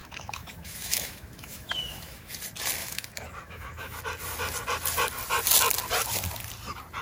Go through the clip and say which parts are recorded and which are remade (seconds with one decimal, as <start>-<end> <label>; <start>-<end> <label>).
0.0-2.3 remade; 2.3-2.8 recorded; 2.8-4.0 remade; 4.0-7.0 recorded